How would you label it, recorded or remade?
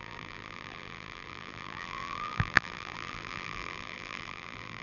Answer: remade